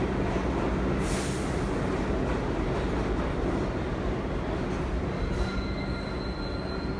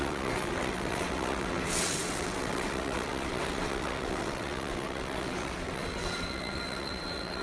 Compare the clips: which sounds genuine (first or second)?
first